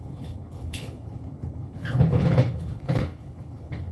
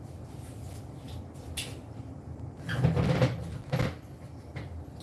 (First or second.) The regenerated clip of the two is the first